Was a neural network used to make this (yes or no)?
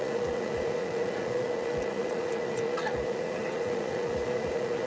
yes